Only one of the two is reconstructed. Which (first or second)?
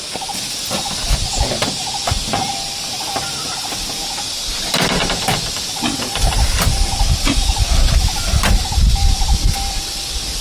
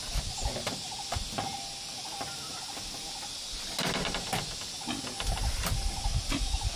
first